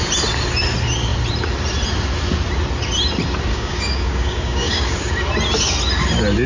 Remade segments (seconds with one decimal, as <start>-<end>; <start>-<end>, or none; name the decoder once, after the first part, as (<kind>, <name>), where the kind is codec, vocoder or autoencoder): 3.5-5.1 (codec, DAC)